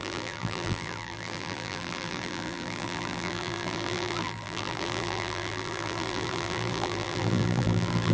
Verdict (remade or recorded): remade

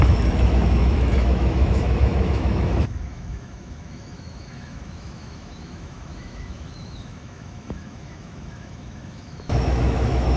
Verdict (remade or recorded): remade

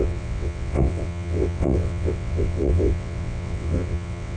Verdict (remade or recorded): remade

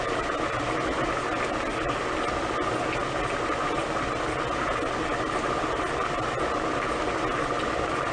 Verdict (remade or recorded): recorded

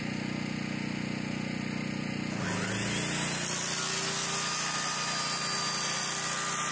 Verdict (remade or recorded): recorded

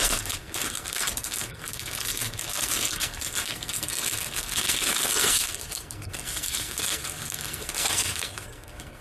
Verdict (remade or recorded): remade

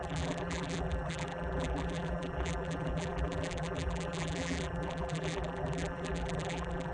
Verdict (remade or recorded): remade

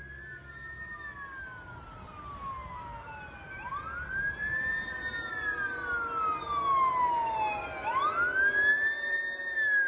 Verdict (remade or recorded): recorded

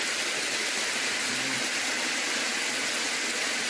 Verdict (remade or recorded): recorded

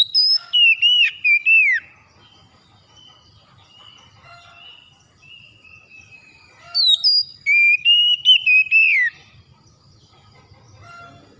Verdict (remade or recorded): recorded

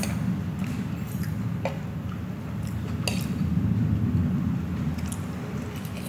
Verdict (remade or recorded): recorded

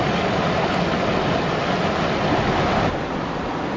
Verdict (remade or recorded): recorded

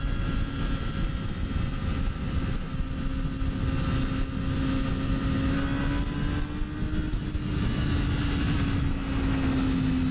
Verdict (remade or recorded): recorded